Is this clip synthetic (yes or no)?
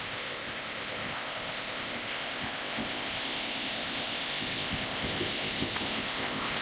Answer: yes